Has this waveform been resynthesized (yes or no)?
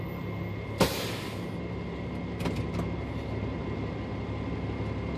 no